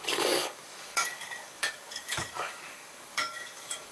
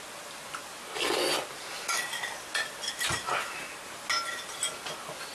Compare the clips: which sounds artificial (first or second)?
first